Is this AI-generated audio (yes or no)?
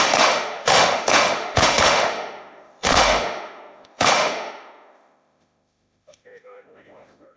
yes